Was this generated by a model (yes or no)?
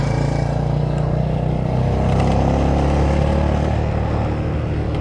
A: no